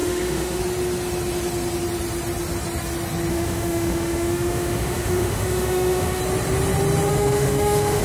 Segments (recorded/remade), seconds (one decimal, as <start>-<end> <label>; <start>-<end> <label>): 0.0-0.6 remade; 0.6-3.3 recorded; 3.3-6.2 remade; 6.2-7.1 recorded; 7.1-8.0 remade